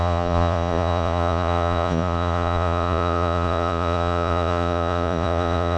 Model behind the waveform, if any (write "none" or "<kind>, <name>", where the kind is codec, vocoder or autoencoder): vocoder, Vocos